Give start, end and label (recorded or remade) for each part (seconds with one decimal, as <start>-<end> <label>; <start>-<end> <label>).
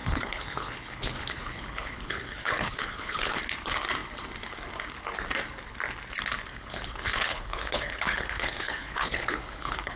0.0-3.4 remade; 3.4-6.5 recorded; 6.5-10.0 remade